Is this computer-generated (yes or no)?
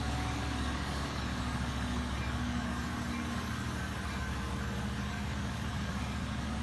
yes